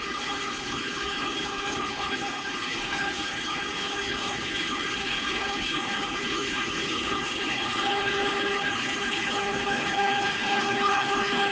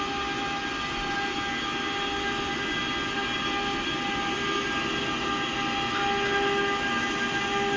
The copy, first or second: first